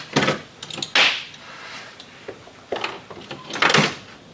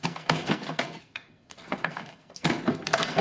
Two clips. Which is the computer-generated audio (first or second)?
second